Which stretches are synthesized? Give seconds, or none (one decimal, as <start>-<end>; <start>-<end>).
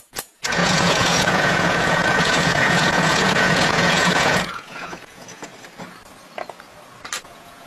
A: 0.0-5.5; 7.2-7.7